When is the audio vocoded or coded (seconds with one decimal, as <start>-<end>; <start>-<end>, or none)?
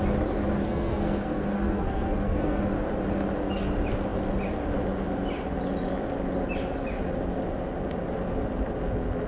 0.6-2.6